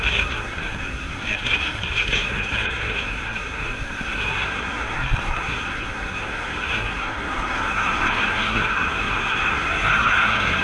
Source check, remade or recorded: remade